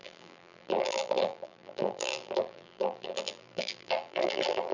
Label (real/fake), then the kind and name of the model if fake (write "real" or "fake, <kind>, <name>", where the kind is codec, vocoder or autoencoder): fake, vocoder, BigVGAN v2